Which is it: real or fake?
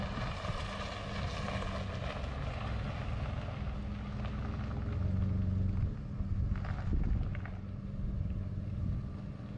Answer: real